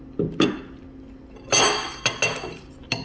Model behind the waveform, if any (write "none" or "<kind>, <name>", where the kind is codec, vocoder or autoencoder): none